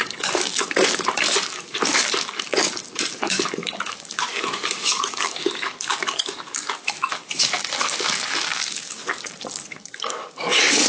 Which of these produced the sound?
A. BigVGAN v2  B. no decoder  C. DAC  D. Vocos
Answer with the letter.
C